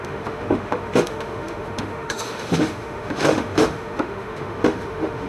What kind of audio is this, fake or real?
fake